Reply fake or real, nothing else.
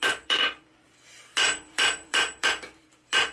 fake